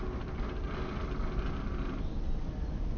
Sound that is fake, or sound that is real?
real